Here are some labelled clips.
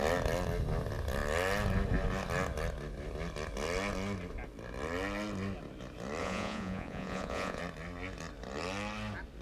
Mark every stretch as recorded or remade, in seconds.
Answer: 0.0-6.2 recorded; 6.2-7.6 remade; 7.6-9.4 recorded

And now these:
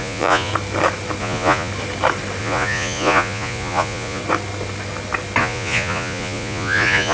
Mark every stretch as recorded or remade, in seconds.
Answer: 0.0-0.5 remade; 0.5-1.2 recorded; 1.2-1.7 remade; 1.7-2.4 recorded; 2.4-4.2 remade; 4.2-5.4 recorded; 5.4-7.1 remade

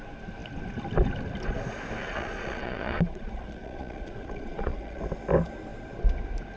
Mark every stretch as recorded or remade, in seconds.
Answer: 0.0-2.0 recorded; 2.0-5.0 remade; 5.0-6.6 recorded

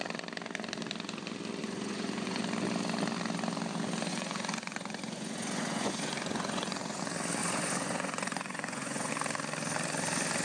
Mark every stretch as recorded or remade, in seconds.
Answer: 0.0-1.6 recorded; 1.6-2.4 remade; 2.4-4.1 recorded; 4.1-7.0 remade; 7.0-7.4 recorded; 7.4-9.1 remade; 9.1-10.4 recorded

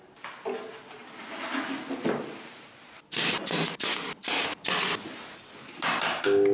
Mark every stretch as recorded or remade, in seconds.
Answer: 0.0-6.5 recorded

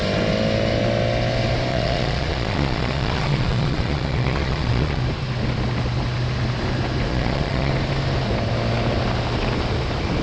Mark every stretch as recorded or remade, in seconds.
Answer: 0.0-1.7 recorded; 1.7-5.0 remade; 5.0-7.1 recorded; 7.1-7.7 remade; 7.7-10.2 recorded

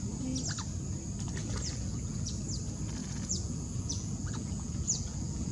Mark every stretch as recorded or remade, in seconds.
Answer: 0.0-1.4 recorded; 1.4-2.4 remade; 2.4-3.0 recorded; 3.0-5.5 remade

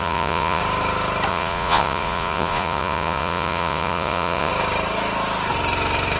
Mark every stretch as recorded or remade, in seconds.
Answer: 0.0-0.6 remade; 0.6-1.3 recorded; 1.3-4.5 remade; 4.5-6.2 recorded